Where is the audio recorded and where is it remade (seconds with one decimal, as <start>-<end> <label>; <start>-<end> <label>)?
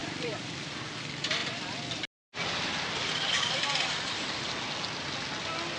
0.0-0.9 remade; 0.9-5.8 recorded